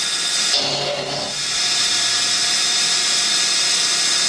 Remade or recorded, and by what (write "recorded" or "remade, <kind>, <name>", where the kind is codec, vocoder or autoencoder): recorded